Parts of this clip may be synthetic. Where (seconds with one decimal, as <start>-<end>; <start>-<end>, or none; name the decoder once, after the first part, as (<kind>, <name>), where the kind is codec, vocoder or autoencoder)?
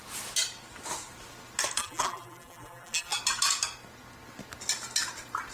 1.8-3.2 (vocoder, BigVGAN v2)